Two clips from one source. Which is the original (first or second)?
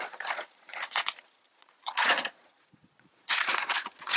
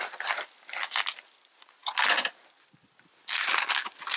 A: second